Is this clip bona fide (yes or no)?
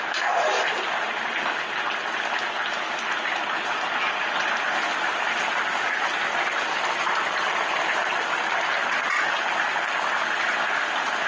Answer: yes